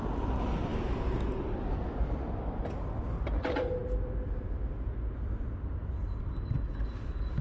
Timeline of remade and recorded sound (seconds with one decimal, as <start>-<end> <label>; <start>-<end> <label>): 0.0-7.4 recorded